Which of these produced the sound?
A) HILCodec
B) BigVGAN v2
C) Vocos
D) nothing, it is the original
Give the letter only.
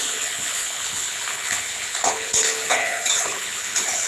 A